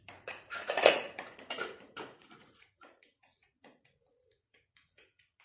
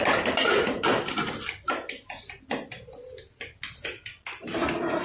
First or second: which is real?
second